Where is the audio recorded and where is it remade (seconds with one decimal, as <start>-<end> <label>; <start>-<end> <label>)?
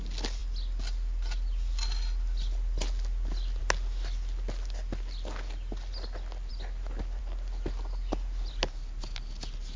0.0-9.8 recorded